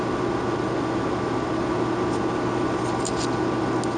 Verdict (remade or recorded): recorded